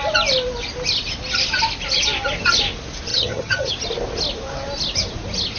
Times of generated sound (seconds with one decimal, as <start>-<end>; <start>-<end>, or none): 3.1-3.7